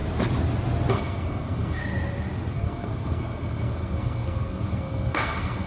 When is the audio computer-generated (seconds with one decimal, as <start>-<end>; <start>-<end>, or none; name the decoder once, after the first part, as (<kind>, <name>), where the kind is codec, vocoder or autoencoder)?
0.9-1.8 (codec, SNAC); 2.5-5.7